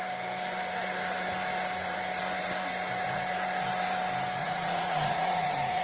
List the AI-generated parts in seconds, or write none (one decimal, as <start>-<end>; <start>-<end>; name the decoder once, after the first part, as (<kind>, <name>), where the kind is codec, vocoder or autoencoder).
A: 4.4-5.8 (vocoder, Vocos)